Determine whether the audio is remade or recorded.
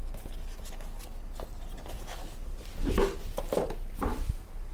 recorded